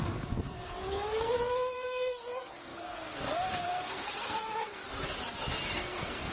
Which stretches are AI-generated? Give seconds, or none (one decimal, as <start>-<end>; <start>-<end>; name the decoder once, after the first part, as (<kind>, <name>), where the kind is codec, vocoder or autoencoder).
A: 0.0-4.8 (codec, SNAC); 5.7-6.3